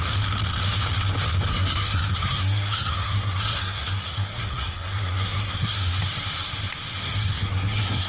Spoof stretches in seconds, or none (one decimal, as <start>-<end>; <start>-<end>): 1.5-6.0; 7.0-8.1